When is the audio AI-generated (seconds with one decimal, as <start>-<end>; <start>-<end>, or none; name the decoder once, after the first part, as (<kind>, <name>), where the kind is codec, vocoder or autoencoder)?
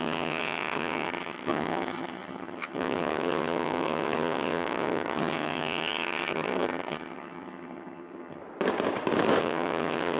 0.0-8.4 (vocoder, HiFi-GAN); 9.4-10.2